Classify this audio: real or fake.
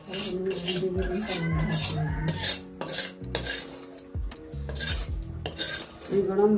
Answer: real